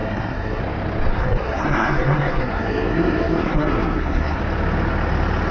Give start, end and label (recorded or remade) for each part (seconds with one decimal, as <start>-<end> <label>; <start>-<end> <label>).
0.0-0.6 remade; 0.6-1.1 recorded; 1.1-4.4 remade; 4.4-5.5 recorded